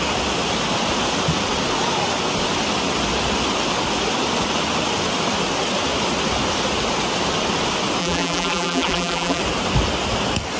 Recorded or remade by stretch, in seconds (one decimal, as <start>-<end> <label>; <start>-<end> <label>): 0.0-8.0 recorded; 8.0-9.4 remade; 9.4-10.6 recorded